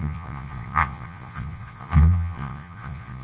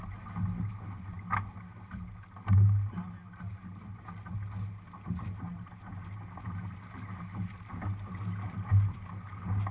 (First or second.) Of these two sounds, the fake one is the first